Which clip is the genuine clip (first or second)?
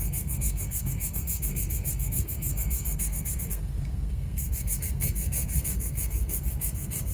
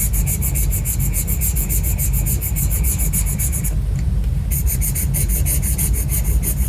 second